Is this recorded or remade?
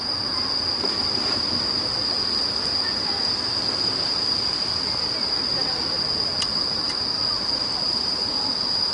recorded